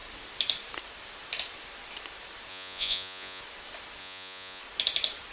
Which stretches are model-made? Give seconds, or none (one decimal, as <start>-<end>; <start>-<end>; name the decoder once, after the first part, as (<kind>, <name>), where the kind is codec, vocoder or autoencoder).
2.5-3.4 (vocoder, Vocos); 4.0-4.6